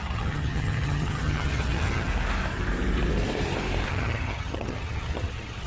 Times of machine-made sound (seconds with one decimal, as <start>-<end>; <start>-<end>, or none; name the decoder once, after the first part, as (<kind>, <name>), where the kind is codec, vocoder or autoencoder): 0.0-2.1 (vocoder, HiFi-GAN); 3.9-5.7